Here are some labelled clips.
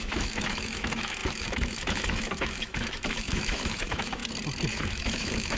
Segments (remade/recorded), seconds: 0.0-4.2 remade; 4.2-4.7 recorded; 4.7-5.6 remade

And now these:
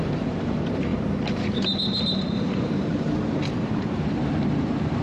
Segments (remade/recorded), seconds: 0.0-5.0 remade